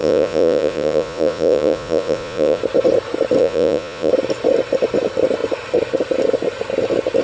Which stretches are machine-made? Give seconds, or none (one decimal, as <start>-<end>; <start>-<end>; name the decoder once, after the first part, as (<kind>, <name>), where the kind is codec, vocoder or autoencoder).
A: 0.0-2.6 (vocoder, Vocos); 3.4-4.1